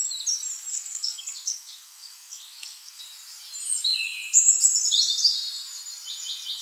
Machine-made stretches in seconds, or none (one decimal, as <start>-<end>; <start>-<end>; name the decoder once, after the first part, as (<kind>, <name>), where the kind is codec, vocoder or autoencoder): 0.7-3.0 (codec, SNAC)